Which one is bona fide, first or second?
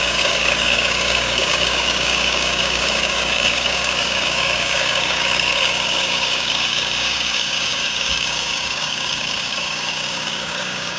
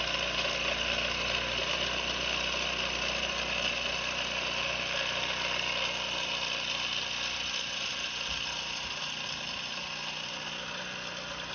second